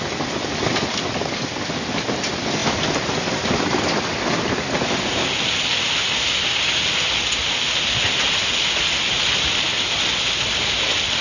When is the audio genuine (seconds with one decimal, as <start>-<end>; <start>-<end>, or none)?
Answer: 0.0-11.2